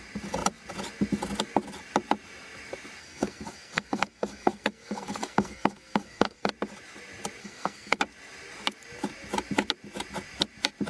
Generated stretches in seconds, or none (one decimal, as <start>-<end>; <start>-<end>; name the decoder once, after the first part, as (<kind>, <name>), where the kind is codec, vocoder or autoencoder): 3.0-6.5 (codec, SNAC); 7.4-8.0